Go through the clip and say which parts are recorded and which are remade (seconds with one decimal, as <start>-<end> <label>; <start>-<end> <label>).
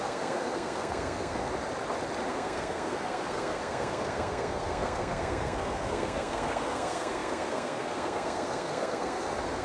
0.0-1.5 remade; 1.5-2.3 recorded; 2.3-9.6 remade